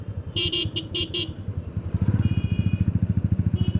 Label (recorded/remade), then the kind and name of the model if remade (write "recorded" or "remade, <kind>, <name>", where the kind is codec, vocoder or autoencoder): recorded